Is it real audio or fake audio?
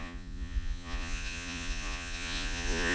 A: fake